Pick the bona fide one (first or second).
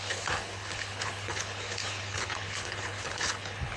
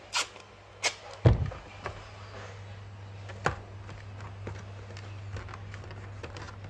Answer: second